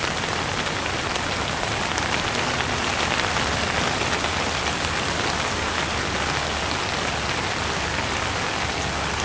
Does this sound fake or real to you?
real